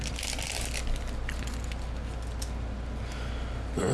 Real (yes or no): yes